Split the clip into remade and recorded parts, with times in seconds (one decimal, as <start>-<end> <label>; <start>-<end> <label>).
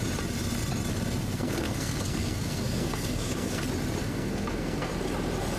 0.0-1.2 recorded; 1.2-3.6 remade; 3.6-4.0 recorded; 4.0-4.9 remade; 4.9-5.6 recorded